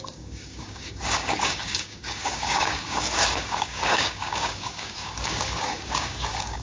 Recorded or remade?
remade